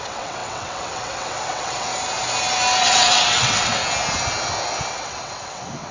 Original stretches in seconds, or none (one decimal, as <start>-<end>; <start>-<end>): 1.9-2.8; 3.8-4.9